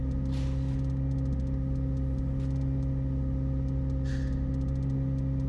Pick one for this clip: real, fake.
real